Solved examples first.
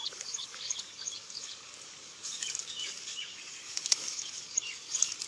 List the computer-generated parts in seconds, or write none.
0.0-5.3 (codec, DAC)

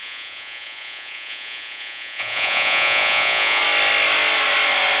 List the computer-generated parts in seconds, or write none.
0.0-3.6 (vocoder, Vocos)

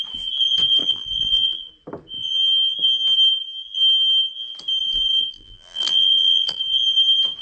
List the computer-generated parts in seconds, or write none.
0.8-1.7 (vocoder, BigVGAN v2); 4.8-6.6

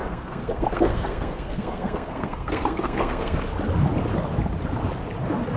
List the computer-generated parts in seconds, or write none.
0.0-3.4 (codec, SNAC)

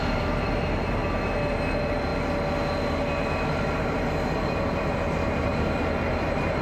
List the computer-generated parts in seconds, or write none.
0.0-1.0 (vocoder, BigVGAN v2); 1.5-2.1; 3.6-5.5; 6.1-6.6

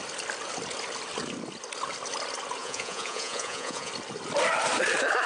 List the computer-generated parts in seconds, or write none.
2.6-3.9 (vocoder, Vocos)

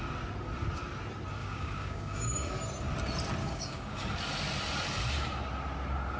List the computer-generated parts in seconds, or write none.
1.4-2.5 (codec, DAC); 3.4-4.0

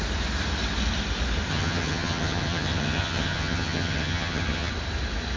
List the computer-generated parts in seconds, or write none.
1.5-4.7 (vocoder, HiFi-GAN)